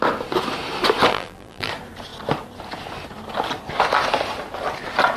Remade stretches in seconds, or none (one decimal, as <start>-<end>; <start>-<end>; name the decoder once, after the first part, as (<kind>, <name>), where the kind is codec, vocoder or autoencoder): 1.1-1.7 (vocoder, BigVGAN v2)